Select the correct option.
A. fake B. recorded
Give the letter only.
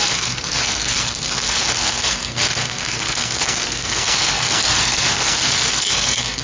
A